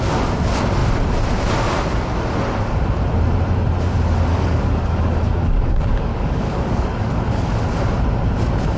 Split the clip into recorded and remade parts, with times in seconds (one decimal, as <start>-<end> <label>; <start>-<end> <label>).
0.0-4.3 recorded; 4.3-7.5 remade; 7.5-8.8 recorded